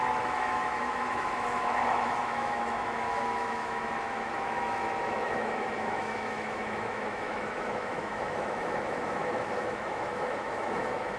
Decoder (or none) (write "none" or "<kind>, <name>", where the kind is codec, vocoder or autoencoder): autoencoder, DAC-VAE